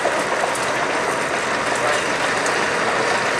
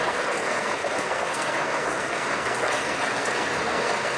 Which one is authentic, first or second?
first